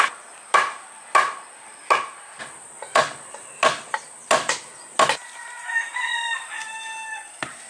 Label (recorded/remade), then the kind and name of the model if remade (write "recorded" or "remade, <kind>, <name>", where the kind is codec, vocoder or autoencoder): recorded